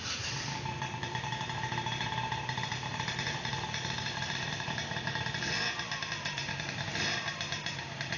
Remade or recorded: remade